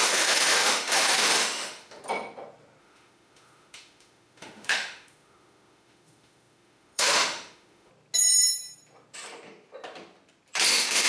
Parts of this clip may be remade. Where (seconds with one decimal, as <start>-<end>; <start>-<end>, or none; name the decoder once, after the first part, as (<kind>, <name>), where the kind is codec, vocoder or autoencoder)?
0.0-2.0 (autoencoder, DAC-VAE); 2.8-7.9; 10.7-11.1

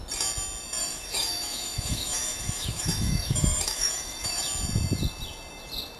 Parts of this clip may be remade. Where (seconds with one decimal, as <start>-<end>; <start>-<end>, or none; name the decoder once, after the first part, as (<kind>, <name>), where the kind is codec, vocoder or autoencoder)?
0.8-4.4 (autoencoder, DAC-VAE)

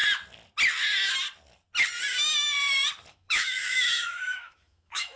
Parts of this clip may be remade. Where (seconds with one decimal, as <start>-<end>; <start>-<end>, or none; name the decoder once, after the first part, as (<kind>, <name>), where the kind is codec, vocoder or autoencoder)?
3.1-5.2 (autoencoder, DAC-VAE)

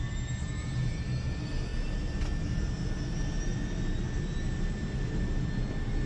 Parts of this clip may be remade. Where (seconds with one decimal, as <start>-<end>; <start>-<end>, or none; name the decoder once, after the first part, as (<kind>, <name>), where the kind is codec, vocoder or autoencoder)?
none

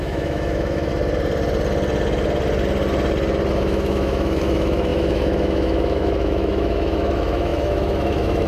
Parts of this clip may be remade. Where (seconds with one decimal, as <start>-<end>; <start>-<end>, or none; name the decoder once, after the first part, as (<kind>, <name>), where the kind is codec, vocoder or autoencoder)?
0.0-0.9 (autoencoder, DAC-VAE); 3.5-8.5

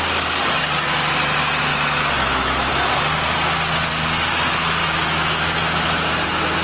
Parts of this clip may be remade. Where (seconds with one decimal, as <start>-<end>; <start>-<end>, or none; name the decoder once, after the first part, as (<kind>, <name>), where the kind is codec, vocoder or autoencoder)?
1.7-2.7 (autoencoder, DAC-VAE); 4.8-6.1

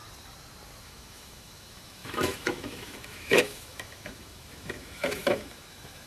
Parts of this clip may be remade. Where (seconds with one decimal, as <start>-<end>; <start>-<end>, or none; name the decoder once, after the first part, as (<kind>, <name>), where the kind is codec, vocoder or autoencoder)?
0.8-6.1 (autoencoder, DAC-VAE)

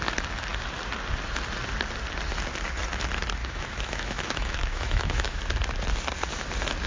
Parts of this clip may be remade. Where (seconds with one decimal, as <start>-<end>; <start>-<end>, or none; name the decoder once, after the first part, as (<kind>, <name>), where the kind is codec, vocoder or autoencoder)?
3.4-5.4 (autoencoder, DAC-VAE)